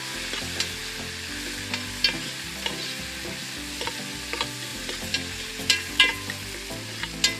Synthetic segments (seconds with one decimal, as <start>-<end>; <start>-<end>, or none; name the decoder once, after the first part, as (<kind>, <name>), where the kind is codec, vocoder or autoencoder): 4.7-6.1 (vocoder, BigVGAN v2)